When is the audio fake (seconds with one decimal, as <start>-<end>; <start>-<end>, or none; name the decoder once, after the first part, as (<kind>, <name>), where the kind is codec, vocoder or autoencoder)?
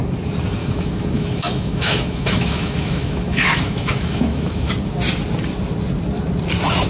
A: 0.6-4.7 (autoencoder, DAC-VAE)